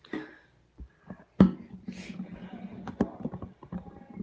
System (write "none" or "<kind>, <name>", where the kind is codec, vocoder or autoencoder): none